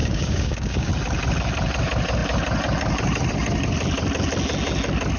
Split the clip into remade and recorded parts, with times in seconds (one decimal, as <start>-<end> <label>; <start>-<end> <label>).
0.0-0.9 remade; 0.9-5.2 recorded